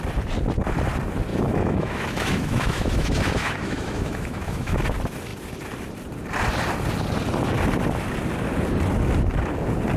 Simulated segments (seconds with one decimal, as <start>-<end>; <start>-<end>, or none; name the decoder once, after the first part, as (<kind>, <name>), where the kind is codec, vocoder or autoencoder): 1.3-4.8 (autoencoder, DAC-VAE)